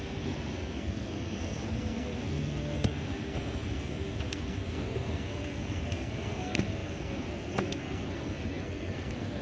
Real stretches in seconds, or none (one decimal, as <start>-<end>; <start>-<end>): none